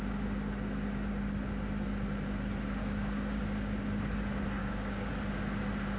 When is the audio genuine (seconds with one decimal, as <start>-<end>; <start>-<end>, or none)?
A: 0.0-2.8; 3.4-4.6; 5.1-6.0